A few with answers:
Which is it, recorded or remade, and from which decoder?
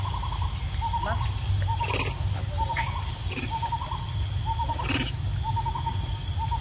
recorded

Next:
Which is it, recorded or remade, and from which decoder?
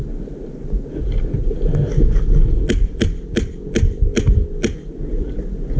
recorded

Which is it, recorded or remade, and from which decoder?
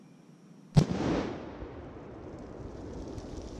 recorded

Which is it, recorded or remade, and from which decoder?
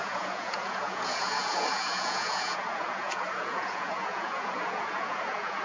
remade, vocoder, Vocos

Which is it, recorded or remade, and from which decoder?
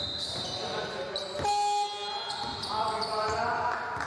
recorded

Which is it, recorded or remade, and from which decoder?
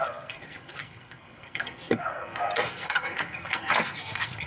remade, codec, SNAC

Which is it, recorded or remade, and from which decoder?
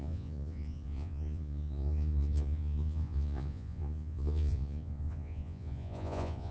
remade, vocoder, Vocos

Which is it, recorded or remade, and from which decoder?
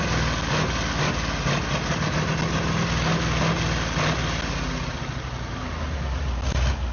recorded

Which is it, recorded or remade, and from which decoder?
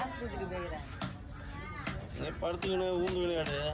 recorded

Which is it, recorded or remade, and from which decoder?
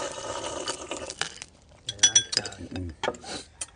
recorded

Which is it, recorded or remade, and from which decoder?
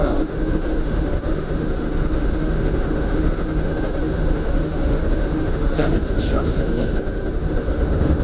remade, autoencoder, DAC-VAE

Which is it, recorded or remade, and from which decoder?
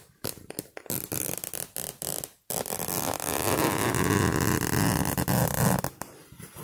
recorded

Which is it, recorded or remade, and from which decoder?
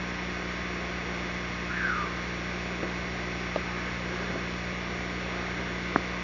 recorded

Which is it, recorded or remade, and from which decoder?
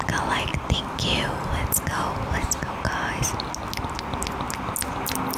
recorded